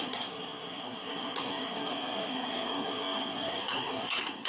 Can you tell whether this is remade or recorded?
remade